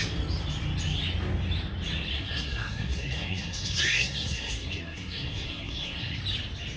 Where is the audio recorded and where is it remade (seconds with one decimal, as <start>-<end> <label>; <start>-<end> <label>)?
0.0-2.1 recorded; 2.1-6.2 remade; 6.2-6.8 recorded